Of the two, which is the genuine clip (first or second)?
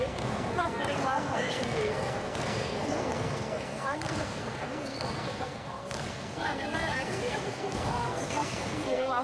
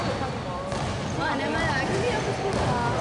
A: second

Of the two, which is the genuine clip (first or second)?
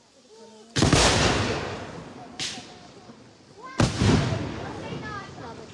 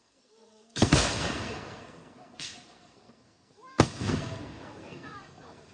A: first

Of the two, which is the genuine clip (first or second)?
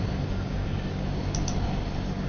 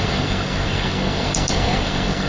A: first